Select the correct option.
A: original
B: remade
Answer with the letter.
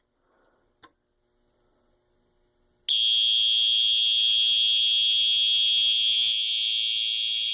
A